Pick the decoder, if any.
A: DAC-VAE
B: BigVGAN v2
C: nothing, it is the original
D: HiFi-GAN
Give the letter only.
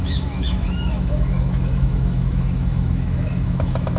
A